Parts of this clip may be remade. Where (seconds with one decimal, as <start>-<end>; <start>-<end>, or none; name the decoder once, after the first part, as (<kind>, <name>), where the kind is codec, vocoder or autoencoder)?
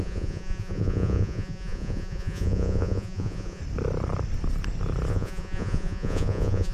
0.0-3.6 (vocoder, Vocos); 5.1-6.7